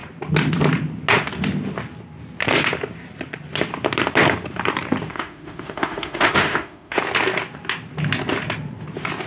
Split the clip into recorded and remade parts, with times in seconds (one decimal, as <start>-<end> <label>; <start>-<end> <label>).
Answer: 0.0-5.1 recorded; 5.1-7.0 remade; 7.0-9.3 recorded